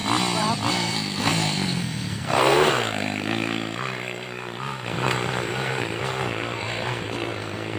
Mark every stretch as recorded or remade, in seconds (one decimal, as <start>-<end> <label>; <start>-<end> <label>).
0.0-0.7 recorded; 0.7-7.8 remade